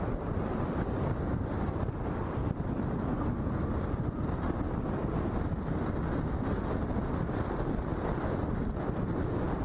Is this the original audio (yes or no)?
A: yes